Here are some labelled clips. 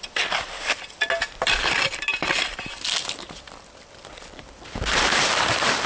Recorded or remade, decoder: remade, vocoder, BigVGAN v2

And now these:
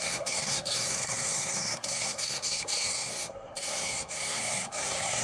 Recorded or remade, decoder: remade, codec, SNAC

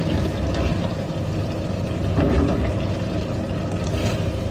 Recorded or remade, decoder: recorded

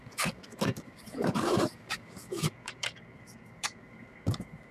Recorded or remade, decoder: remade, codec, DAC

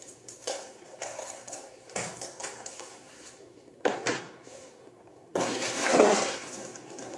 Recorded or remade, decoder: remade, codec, SNAC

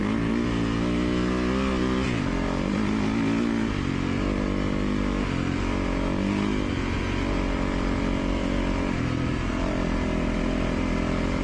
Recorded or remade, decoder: recorded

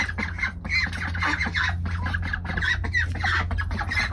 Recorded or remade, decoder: recorded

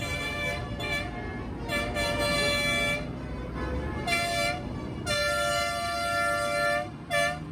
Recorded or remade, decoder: recorded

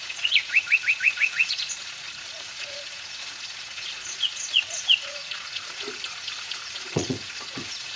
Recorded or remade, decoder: remade, vocoder, Vocos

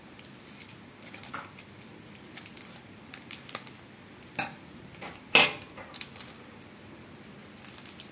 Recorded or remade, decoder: recorded